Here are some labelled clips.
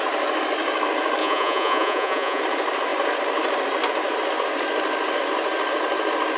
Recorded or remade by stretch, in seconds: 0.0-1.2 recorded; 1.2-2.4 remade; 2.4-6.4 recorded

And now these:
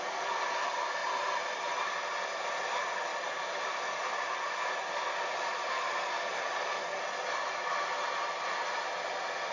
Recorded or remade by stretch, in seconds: 0.0-1.0 recorded; 1.0-1.6 remade; 1.6-3.1 recorded; 3.1-4.4 remade; 4.4-9.5 recorded

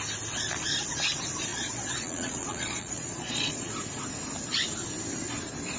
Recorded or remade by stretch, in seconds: 0.0-1.5 recorded; 1.5-3.7 remade; 3.7-5.8 recorded

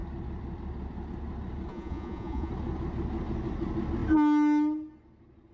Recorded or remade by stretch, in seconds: 0.0-1.7 recorded; 1.7-2.5 remade; 2.5-5.5 recorded

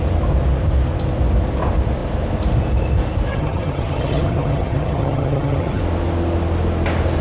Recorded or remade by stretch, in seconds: 0.0-3.3 recorded; 3.3-5.8 remade; 5.8-7.2 recorded